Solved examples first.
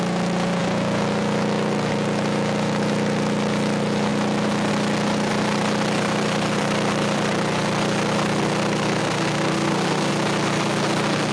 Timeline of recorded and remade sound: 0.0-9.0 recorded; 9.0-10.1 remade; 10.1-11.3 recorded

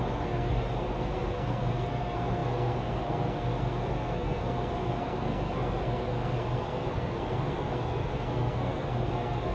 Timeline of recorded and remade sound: 0.0-9.5 remade

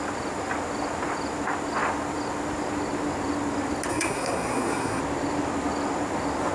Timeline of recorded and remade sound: 0.0-3.9 recorded; 3.9-5.0 remade; 5.0-6.5 recorded

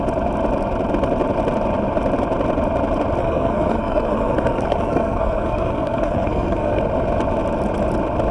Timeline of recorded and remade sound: 0.0-3.2 recorded; 3.2-6.8 remade; 6.8-8.3 recorded